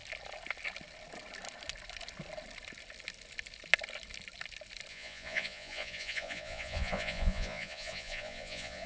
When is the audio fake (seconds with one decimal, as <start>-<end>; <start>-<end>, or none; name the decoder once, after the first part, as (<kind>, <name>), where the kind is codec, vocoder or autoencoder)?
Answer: 4.9-8.9 (vocoder, Vocos)